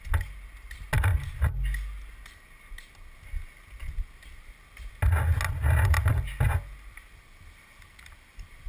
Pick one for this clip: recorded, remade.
recorded